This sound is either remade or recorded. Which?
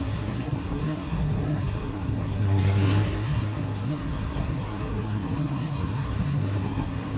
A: remade